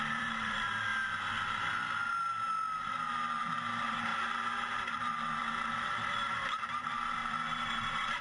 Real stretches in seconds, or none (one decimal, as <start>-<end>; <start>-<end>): 0.9-3.4